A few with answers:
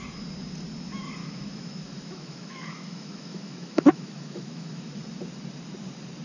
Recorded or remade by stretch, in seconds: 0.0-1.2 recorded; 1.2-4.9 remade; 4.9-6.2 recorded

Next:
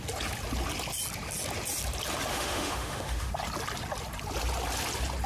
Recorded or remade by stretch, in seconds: 0.0-2.3 recorded; 2.3-3.3 remade; 3.3-5.3 recorded